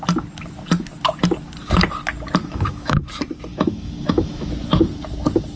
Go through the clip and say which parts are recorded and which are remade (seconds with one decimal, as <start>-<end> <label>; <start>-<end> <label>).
0.0-2.4 recorded; 2.4-3.1 remade; 3.1-3.5 recorded; 3.5-4.5 remade; 4.5-5.6 recorded